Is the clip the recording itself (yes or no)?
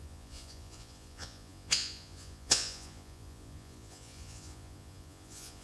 no